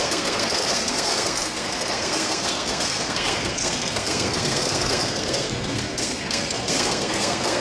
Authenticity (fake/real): fake